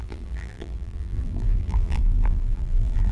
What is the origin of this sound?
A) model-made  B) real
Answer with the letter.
A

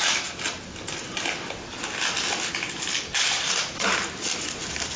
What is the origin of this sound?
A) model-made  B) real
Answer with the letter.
B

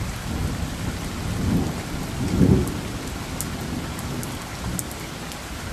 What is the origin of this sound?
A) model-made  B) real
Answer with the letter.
B